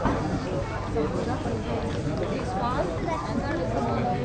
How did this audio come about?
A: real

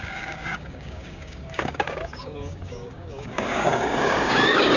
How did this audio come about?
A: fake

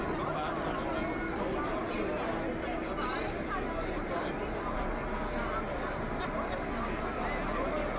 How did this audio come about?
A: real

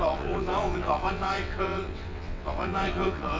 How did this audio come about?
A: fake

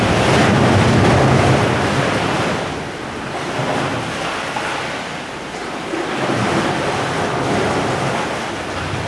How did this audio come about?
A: real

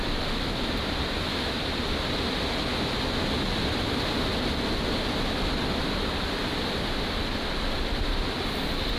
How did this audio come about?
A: real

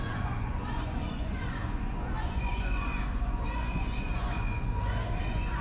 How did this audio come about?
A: fake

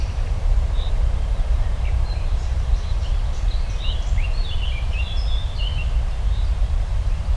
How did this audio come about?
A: fake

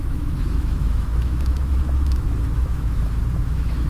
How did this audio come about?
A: fake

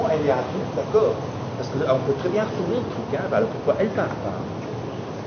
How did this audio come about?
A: real